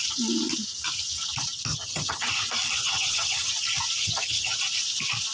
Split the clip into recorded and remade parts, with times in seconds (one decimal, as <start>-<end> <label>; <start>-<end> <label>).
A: 0.0-1.7 recorded; 1.7-2.3 remade; 2.3-2.8 recorded; 2.8-3.5 remade; 3.5-4.0 recorded; 4.0-4.6 remade; 4.6-5.3 recorded

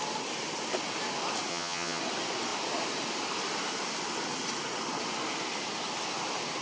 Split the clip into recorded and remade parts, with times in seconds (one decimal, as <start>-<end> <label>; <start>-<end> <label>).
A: 0.0-1.5 recorded; 1.5-2.0 remade; 2.0-6.6 recorded

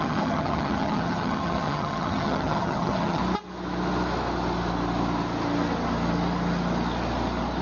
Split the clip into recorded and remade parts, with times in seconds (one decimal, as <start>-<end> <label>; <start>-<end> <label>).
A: 0.0-3.2 remade; 3.2-7.6 recorded

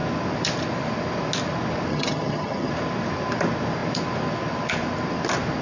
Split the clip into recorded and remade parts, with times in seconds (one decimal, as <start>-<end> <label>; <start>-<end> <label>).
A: 0.0-1.9 recorded; 1.9-2.7 remade; 2.7-5.6 recorded

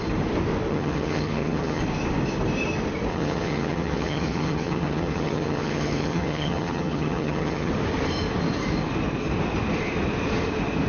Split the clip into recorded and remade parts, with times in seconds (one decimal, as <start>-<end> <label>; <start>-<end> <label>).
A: 0.0-0.7 recorded; 0.7-1.8 remade; 1.8-3.1 recorded; 3.1-7.7 remade; 7.7-10.9 recorded

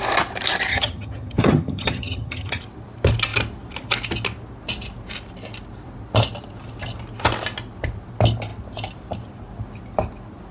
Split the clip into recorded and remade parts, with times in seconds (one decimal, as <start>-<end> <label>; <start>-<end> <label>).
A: 0.0-0.7 recorded; 0.7-2.6 remade; 2.6-10.5 recorded

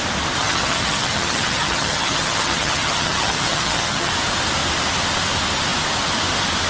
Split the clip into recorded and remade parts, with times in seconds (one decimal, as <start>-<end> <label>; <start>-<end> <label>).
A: 0.0-0.4 recorded; 0.4-4.1 remade; 4.1-6.7 recorded

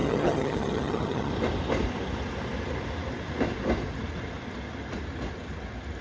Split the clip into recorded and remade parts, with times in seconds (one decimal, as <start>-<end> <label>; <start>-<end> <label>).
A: 0.0-1.3 remade; 1.3-6.0 recorded